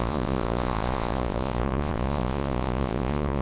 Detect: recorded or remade remade